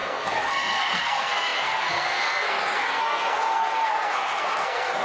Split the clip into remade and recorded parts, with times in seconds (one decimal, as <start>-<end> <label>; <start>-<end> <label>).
0.0-5.0 remade